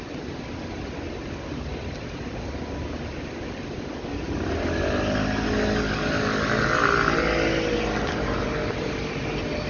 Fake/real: real